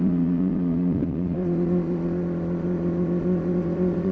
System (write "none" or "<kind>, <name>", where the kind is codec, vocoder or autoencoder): vocoder, Vocos